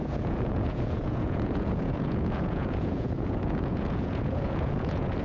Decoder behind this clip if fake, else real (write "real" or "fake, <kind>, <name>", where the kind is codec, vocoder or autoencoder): fake, vocoder, Vocos